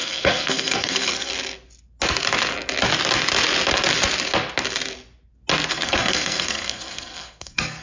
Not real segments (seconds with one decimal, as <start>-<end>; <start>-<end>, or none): 0.0-1.3; 5.7-7.8